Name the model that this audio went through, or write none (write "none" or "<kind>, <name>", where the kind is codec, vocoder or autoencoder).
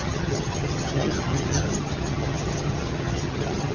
vocoder, HiFi-GAN